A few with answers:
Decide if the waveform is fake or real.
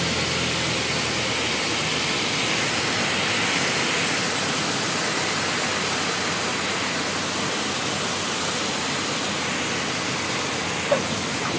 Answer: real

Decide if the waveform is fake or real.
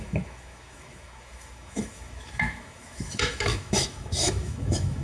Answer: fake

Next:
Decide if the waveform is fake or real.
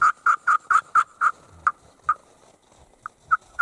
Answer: real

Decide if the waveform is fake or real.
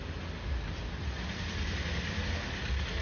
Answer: real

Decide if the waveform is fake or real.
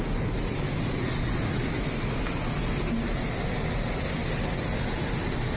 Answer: real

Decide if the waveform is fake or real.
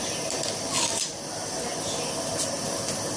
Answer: real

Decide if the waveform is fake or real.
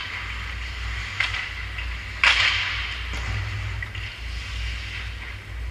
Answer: real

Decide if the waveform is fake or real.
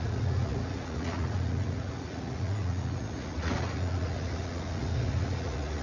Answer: fake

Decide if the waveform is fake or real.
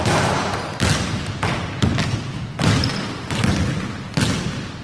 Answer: real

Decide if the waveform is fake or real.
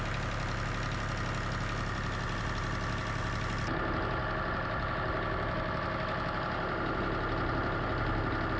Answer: real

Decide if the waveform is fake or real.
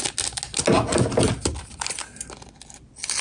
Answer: real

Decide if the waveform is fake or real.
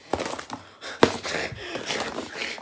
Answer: real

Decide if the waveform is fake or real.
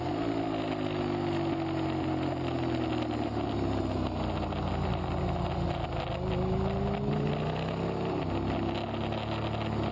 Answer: real